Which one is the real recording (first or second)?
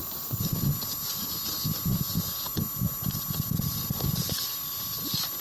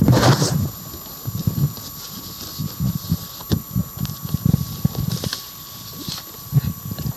first